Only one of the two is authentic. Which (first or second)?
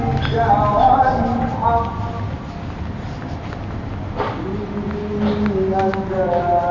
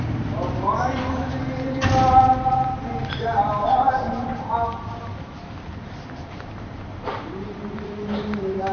first